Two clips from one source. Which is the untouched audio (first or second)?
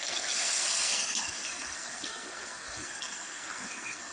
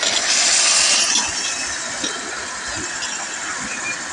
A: second